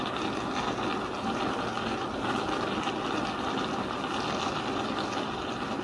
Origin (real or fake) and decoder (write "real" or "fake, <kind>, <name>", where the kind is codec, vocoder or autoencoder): real